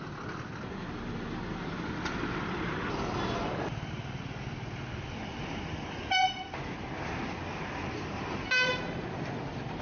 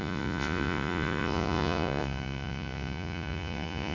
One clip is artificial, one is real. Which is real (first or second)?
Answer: first